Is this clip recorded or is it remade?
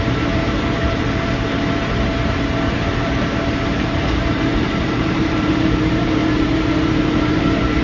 remade